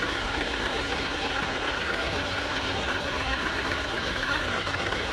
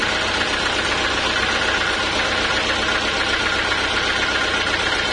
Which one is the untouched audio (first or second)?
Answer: second